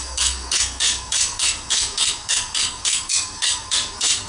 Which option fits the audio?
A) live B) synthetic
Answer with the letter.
B